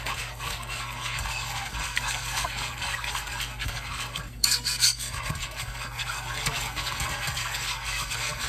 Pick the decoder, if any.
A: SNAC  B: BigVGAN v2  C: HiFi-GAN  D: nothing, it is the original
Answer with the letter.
A